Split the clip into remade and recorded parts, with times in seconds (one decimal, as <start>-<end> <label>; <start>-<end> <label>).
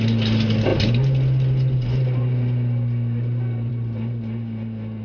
0.0-5.0 recorded